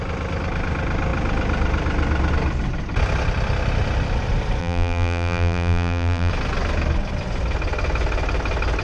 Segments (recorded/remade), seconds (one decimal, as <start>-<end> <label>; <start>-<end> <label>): 0.0-4.6 recorded; 4.6-6.3 remade; 6.3-8.8 recorded